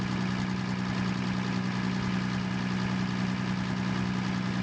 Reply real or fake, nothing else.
real